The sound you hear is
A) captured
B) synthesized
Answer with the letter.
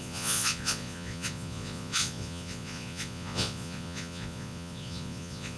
B